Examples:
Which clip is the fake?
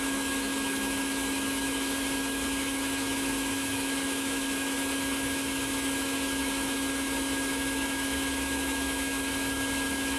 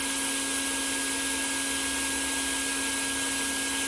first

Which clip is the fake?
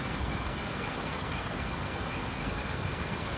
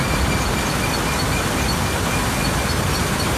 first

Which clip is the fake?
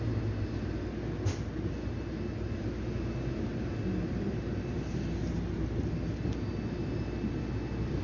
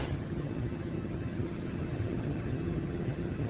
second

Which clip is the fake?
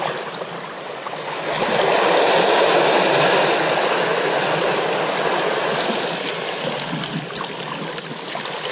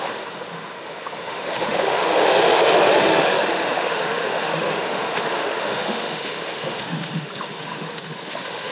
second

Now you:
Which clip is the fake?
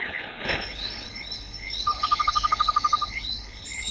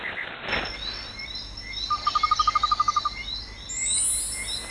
first